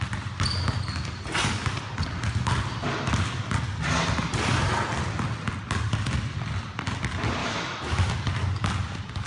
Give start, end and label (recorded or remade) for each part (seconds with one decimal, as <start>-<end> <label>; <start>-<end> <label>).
0.0-7.4 recorded; 7.4-8.1 remade; 8.1-9.3 recorded